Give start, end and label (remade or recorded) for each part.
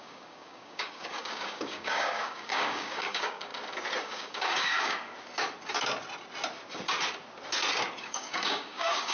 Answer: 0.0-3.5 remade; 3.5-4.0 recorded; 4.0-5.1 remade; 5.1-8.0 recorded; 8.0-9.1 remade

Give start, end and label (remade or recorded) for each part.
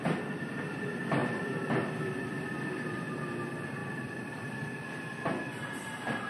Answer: 0.0-1.2 recorded; 1.2-3.1 remade; 3.1-3.8 recorded; 3.8-4.9 remade; 4.9-6.3 recorded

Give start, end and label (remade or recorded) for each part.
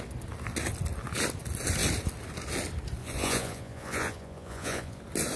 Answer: 0.0-3.0 recorded; 3.0-5.0 remade; 5.0-5.4 recorded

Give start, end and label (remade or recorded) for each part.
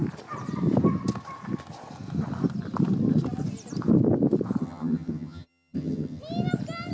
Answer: 0.0-4.6 recorded; 4.6-6.2 remade; 6.2-6.9 recorded